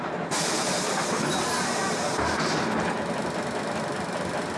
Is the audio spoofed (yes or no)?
no